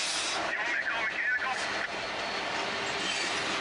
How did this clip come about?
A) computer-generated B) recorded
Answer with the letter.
B